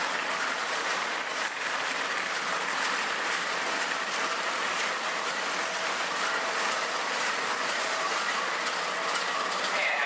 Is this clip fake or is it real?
fake